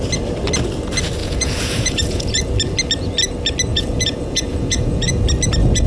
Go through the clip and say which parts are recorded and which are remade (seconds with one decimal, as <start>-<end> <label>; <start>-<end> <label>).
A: 0.0-1.2 recorded; 1.2-2.5 remade; 2.5-3.7 recorded; 3.7-5.1 remade; 5.1-5.9 recorded